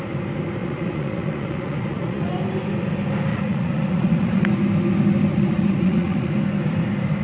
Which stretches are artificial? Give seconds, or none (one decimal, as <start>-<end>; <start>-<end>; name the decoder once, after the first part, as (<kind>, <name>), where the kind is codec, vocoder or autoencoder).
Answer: 0.6-2.3 (vocoder, Vocos); 3.3-4.5; 5.3-6.3